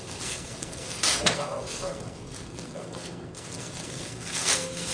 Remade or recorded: remade